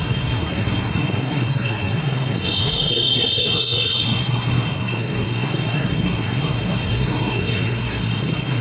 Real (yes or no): no